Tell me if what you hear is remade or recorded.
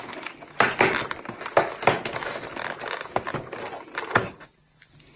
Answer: recorded